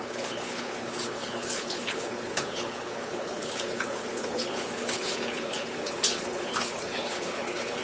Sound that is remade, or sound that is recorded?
remade